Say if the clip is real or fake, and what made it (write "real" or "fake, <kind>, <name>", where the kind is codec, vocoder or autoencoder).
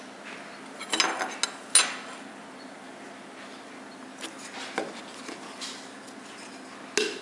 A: real